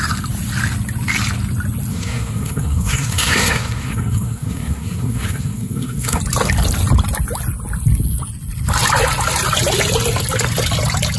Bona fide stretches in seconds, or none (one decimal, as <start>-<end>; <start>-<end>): 0.0-1.9; 6.2-11.2